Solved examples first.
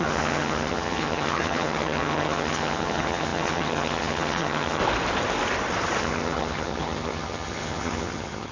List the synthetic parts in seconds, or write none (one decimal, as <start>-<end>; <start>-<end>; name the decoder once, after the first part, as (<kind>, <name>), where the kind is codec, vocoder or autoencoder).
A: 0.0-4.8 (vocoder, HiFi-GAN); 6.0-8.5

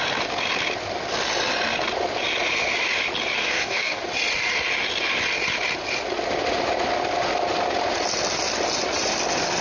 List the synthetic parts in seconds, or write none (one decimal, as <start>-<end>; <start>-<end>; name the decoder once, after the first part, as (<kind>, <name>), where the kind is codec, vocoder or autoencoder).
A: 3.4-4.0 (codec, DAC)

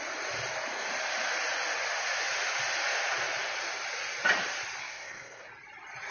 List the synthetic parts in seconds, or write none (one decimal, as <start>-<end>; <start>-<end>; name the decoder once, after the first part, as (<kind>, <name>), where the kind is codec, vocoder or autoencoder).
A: 4.8-5.5 (codec, SNAC)

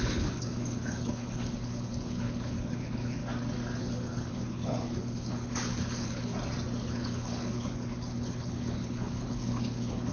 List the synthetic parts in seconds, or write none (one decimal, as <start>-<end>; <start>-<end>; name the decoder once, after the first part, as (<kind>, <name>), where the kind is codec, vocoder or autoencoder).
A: 0.0-3.2 (codec, HILCodec); 3.8-6.3; 6.8-10.1

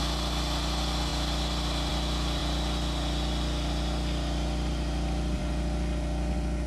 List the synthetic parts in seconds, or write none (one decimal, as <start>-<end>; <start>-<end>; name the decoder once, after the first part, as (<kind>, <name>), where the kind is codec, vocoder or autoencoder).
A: none